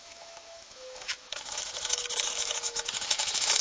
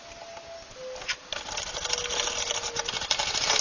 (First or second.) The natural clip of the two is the second